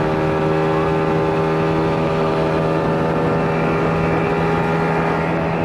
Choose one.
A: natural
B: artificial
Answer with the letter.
A